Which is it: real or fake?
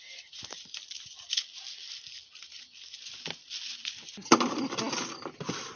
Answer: real